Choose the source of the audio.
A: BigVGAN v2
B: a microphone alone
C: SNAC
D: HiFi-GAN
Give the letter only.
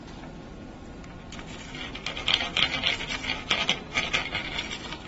B